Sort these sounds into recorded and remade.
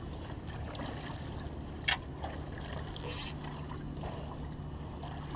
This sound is recorded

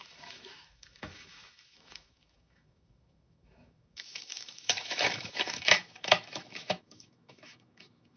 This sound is remade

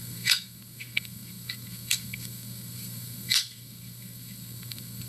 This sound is remade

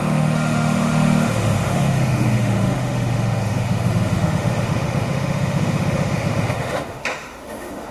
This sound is remade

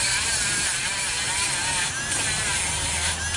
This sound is recorded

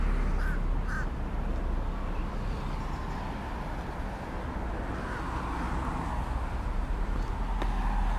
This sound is recorded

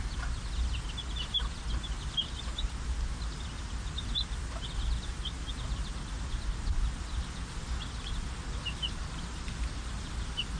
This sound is recorded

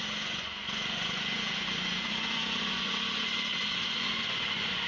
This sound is remade